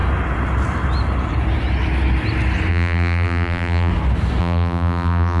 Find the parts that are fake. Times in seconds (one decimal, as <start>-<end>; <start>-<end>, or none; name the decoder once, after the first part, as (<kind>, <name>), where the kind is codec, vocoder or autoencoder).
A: 2.7-3.9 (vocoder, BigVGAN v2); 4.4-5.4